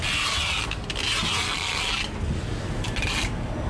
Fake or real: real